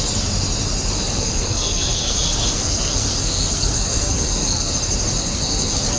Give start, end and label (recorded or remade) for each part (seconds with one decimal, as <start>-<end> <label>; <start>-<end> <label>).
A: 0.0-1.1 recorded; 1.1-4.7 remade; 4.7-5.2 recorded; 5.2-6.0 remade